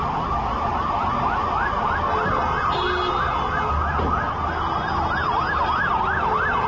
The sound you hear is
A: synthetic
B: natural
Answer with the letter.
B